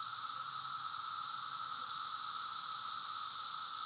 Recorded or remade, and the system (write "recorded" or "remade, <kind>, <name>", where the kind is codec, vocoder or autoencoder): recorded